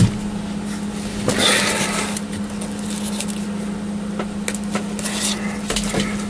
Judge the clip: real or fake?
real